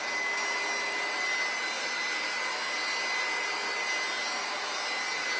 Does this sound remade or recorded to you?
recorded